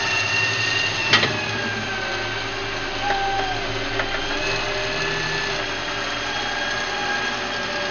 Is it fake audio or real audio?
real